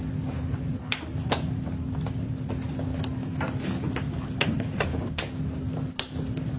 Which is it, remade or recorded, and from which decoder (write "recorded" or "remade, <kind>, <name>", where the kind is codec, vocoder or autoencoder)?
recorded